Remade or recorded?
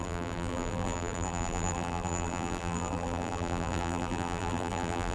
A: remade